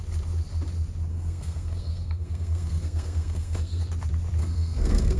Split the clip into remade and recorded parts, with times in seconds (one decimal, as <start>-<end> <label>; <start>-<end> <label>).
0.0-1.1 recorded; 1.1-3.8 remade; 3.8-4.4 recorded; 4.4-5.2 remade